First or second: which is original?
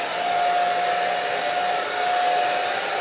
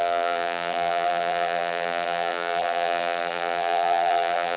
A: first